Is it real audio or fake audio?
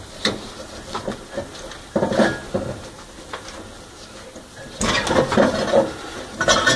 real